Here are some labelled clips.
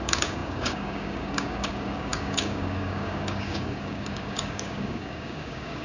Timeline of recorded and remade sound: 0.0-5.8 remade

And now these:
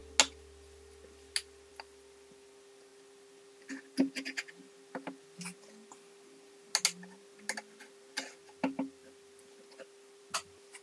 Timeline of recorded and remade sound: 0.0-10.8 recorded

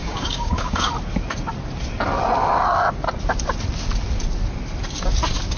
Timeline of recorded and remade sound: 0.0-0.9 remade; 0.9-5.6 recorded

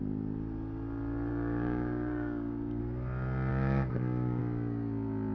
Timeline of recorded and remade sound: 0.0-1.3 recorded; 1.3-2.8 remade; 2.8-3.5 recorded; 3.5-4.4 remade; 4.4-5.3 recorded

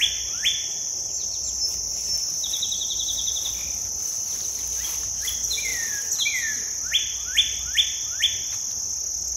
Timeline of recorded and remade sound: 0.0-9.4 recorded